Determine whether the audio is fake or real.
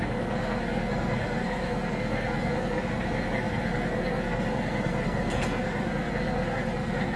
fake